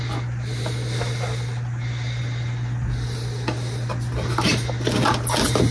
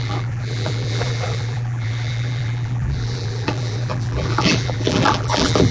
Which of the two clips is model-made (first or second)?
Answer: second